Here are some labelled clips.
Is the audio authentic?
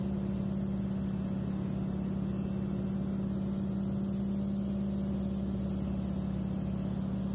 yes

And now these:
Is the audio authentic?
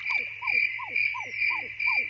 yes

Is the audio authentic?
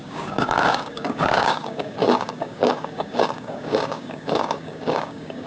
no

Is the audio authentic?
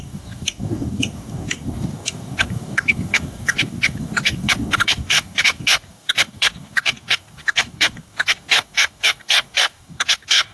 no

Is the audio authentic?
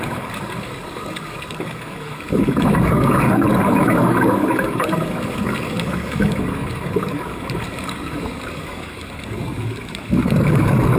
no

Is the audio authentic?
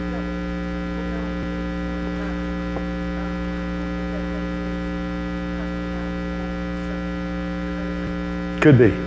yes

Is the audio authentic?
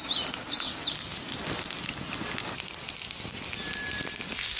yes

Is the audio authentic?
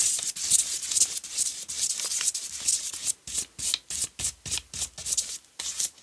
yes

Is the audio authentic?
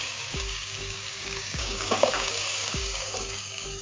no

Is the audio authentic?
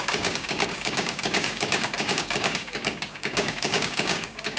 no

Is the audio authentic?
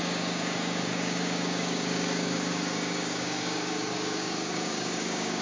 no